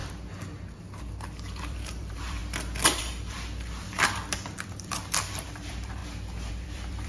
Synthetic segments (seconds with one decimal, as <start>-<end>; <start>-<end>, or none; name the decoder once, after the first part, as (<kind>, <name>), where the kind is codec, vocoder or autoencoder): 1.0-2.4 (vocoder, BigVGAN v2); 3.0-6.0; 6.5-7.1